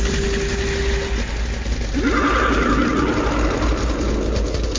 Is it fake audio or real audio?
real